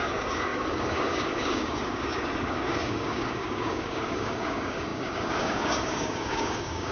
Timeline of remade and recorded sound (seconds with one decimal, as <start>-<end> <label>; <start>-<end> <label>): 0.0-6.9 remade